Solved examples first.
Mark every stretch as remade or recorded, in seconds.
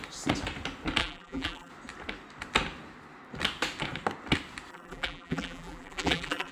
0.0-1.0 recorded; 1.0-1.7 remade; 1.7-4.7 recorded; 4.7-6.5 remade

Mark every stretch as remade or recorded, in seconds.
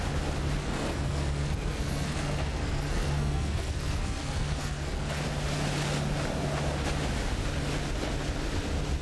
0.0-0.6 recorded; 0.6-5.2 remade; 5.2-9.0 recorded